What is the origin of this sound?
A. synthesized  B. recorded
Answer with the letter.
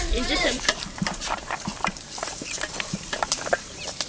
A